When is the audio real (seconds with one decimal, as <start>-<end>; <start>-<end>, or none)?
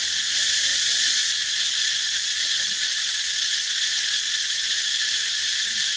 0.0-0.7; 4.3-6.0